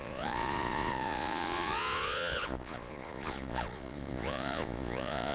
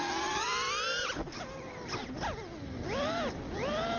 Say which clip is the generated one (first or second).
first